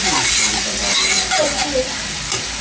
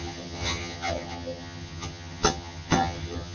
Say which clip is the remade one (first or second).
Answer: second